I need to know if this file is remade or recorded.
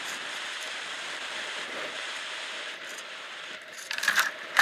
remade